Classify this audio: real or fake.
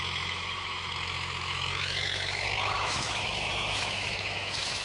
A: fake